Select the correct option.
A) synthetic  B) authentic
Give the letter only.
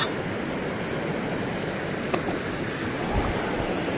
B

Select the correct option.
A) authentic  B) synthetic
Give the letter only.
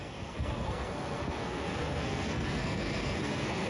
B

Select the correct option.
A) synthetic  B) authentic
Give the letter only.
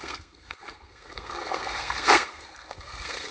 A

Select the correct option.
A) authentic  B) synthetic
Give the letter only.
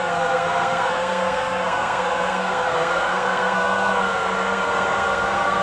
B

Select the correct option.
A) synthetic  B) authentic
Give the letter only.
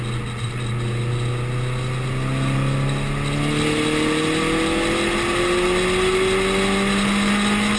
B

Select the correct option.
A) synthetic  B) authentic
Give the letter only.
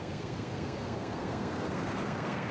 A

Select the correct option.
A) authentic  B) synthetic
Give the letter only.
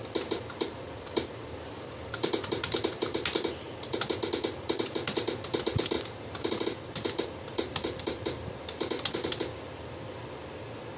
A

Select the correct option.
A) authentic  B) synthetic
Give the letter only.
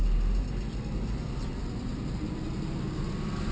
A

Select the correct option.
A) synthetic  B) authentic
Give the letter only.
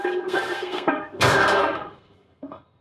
A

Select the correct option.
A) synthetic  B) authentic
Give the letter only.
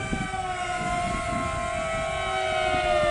B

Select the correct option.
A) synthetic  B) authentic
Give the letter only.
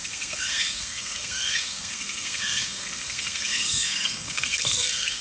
A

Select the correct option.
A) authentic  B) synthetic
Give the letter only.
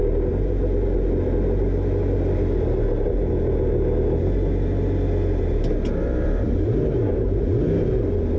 A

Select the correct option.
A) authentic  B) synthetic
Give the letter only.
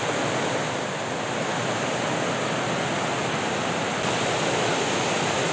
A